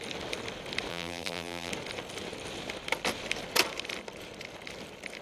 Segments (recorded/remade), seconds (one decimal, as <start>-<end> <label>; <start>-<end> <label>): 0.0-0.9 recorded; 0.9-1.7 remade; 1.7-5.2 recorded

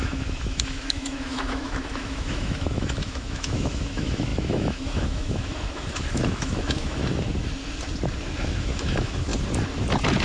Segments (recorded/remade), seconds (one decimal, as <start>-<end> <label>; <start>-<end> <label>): 0.0-7.0 remade; 7.0-8.6 recorded; 8.6-9.3 remade; 9.3-10.2 recorded

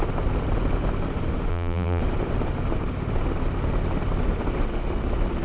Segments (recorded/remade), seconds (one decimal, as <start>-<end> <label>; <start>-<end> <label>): 0.0-1.5 recorded; 1.5-2.0 remade; 2.0-5.4 recorded

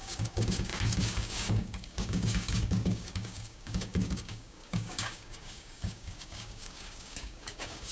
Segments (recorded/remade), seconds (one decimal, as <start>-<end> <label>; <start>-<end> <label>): 0.0-7.9 remade